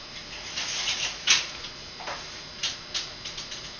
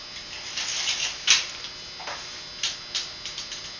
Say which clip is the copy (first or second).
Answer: first